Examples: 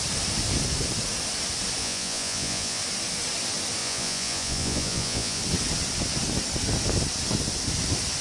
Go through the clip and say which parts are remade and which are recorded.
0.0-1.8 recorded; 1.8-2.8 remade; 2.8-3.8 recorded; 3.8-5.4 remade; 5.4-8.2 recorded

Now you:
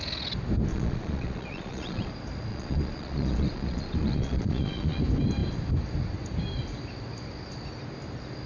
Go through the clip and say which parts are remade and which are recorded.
0.0-0.7 recorded; 0.7-2.1 remade; 2.1-2.5 recorded; 2.5-5.0 remade; 5.0-8.5 recorded

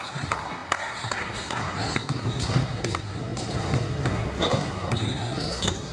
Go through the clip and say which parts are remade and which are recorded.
0.0-5.9 remade